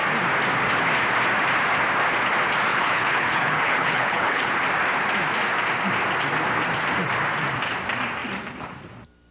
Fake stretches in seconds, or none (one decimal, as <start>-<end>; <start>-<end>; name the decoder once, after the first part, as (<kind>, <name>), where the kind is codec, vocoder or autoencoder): 2.7-4.5 (codec, HILCodec)

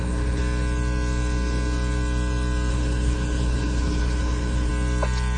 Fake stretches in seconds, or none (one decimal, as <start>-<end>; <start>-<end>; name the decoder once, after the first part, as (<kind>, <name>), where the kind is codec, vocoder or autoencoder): 0.0-0.4 (codec, HILCodec); 2.7-4.7

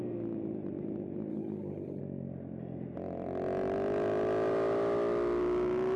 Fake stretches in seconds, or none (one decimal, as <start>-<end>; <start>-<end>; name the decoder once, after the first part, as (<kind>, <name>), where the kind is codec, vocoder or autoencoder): 1.3-2.0 (codec, HILCodec)

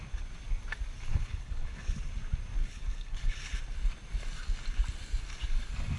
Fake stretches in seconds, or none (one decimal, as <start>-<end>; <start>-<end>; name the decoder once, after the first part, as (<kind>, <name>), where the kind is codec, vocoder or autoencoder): 1.1-2.0 (codec, HILCodec); 2.6-3.6

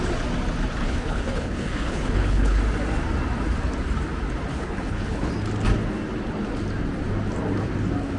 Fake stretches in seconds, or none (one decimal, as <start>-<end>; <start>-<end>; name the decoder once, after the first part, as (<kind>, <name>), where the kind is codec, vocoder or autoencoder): 0.8-2.6 (codec, HILCodec); 4.5-5.3